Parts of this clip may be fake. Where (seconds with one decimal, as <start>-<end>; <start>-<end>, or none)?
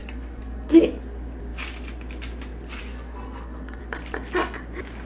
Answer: 0.0-0.9; 2.8-3.8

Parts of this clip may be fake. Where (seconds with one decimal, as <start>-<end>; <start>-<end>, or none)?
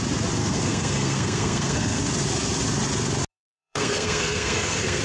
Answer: 0.4-2.0; 3.3-5.0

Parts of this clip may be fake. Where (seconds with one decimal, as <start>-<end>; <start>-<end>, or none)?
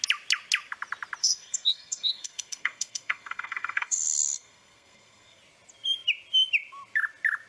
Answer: 1.2-5.4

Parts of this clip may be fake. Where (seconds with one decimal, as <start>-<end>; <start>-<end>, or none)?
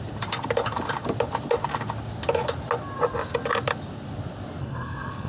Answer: 4.6-5.3